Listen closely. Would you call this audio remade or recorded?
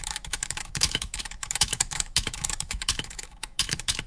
remade